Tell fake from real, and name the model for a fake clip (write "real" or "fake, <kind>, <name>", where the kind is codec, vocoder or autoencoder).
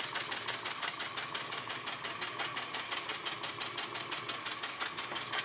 real